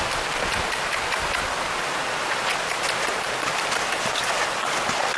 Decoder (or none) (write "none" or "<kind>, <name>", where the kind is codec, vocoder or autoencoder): none